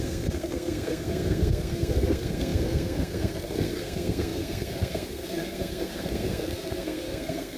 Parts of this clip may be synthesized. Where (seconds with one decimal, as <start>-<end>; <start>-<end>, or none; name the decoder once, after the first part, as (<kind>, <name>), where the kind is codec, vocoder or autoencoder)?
0.0-7.6 (codec, SNAC)